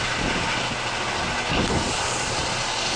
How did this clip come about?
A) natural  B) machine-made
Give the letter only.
A